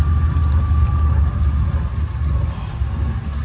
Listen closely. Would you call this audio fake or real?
real